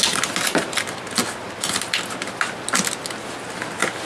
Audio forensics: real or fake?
real